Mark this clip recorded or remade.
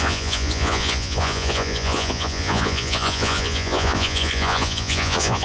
remade